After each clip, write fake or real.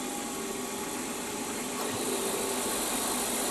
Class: real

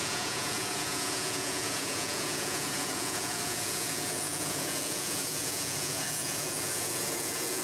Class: fake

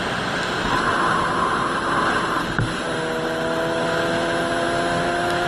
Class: real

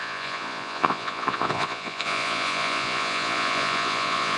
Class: fake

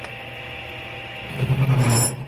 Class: real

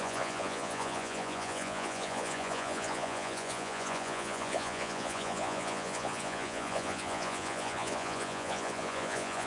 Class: fake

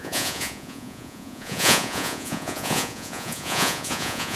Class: fake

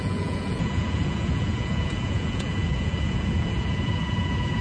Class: fake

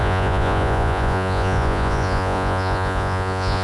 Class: fake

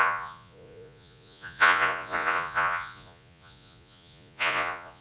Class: fake